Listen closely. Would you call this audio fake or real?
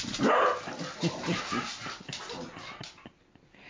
real